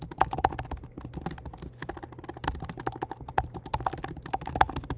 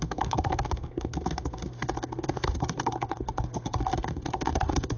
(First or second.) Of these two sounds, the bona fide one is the first